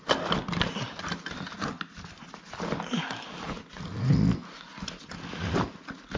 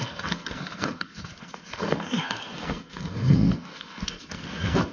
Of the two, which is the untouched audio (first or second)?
first